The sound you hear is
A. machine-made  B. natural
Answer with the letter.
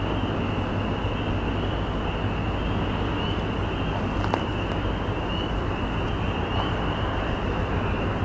B